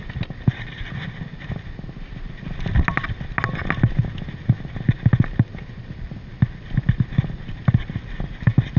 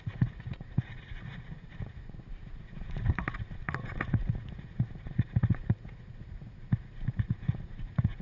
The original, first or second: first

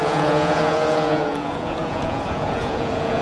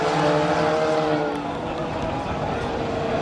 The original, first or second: second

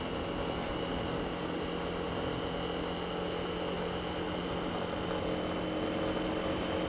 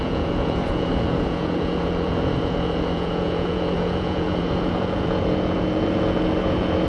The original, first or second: first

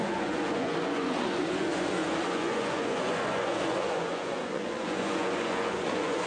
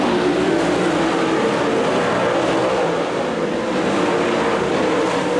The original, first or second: second